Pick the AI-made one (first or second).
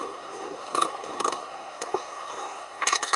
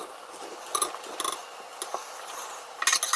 first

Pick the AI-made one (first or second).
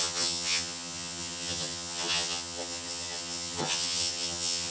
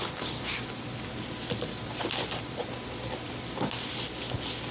first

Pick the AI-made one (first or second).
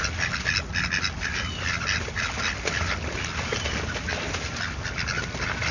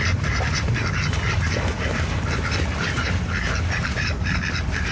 second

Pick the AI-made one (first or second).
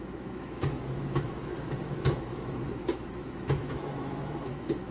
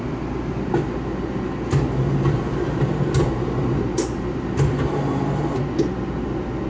first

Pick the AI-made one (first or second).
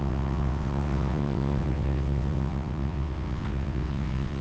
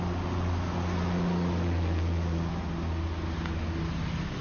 first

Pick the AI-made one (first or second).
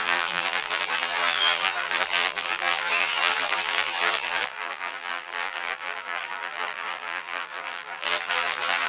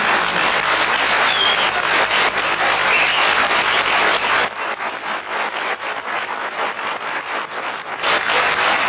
first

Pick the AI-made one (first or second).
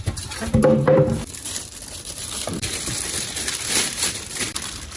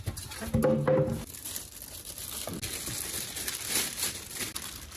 first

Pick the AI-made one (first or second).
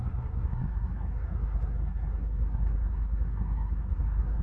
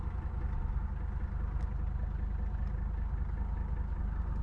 first